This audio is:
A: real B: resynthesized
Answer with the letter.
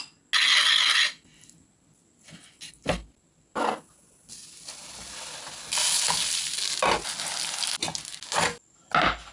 A